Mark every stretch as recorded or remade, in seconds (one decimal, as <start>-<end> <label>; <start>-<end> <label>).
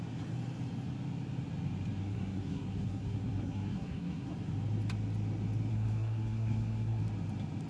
0.0-2.0 recorded; 2.0-4.3 remade; 4.3-5.7 recorded; 5.7-7.0 remade; 7.0-7.7 recorded